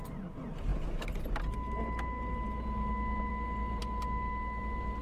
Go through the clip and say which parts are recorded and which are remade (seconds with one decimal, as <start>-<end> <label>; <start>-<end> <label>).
0.0-5.0 recorded